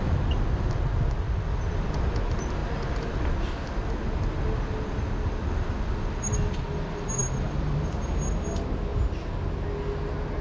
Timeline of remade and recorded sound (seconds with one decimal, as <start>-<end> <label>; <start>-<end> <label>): 0.0-10.4 recorded

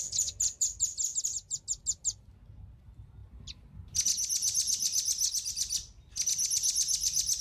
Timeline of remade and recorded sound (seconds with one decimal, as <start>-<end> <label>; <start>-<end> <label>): 0.0-7.4 recorded

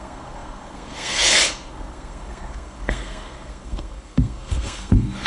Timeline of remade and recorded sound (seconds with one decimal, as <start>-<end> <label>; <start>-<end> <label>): 0.0-5.3 remade

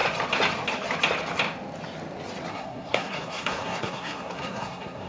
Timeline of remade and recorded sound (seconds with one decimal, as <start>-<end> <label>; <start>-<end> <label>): 0.0-2.5 recorded; 2.5-5.1 remade

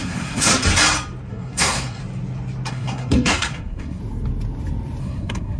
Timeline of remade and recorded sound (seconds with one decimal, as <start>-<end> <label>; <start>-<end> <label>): 0.0-0.5 remade; 0.5-1.3 recorded; 1.3-2.0 remade; 2.0-2.7 recorded; 2.7-4.0 remade; 4.0-5.0 recorded; 5.0-5.6 remade

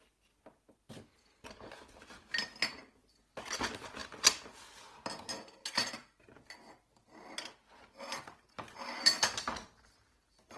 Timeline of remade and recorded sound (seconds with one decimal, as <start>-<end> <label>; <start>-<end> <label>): 0.0-10.6 recorded

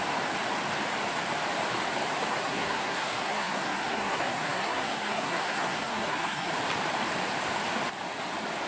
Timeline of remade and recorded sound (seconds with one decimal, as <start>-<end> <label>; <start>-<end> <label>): 0.0-2.3 recorded; 2.3-6.5 remade; 6.5-8.7 recorded

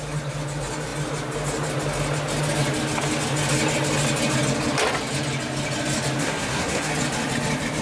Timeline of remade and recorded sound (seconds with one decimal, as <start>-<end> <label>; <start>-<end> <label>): 0.0-6.2 recorded; 6.2-6.9 remade; 6.9-7.8 recorded